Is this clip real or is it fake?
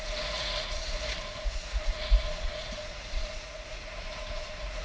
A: fake